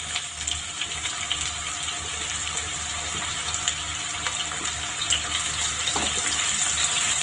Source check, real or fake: real